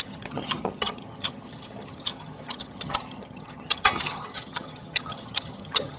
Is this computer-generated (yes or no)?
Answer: yes